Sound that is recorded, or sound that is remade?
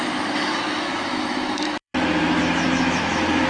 remade